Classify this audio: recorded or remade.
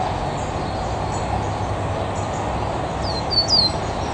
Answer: recorded